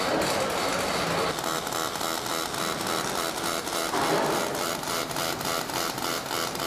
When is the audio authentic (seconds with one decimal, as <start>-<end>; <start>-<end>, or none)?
0.0-6.7